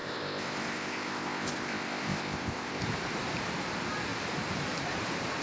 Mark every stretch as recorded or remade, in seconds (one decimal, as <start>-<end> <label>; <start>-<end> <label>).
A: 0.0-2.8 remade; 2.8-5.4 recorded